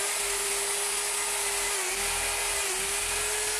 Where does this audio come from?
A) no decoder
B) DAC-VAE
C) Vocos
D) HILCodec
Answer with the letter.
A